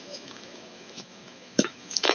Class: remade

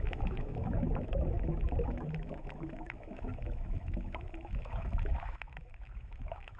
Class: remade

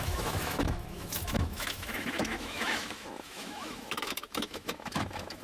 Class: remade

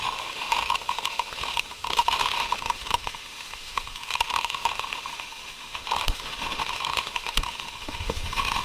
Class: remade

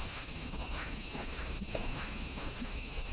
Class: remade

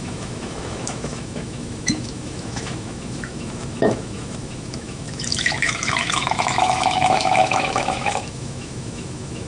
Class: remade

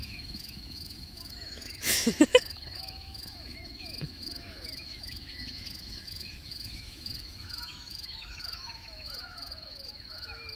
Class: remade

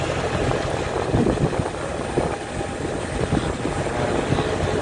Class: recorded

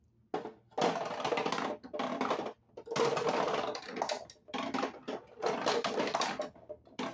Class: recorded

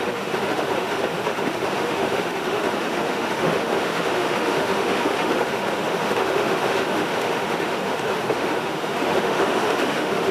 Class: remade